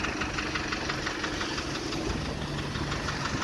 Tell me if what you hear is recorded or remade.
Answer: recorded